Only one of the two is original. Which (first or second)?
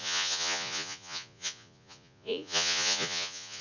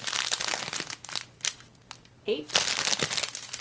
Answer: second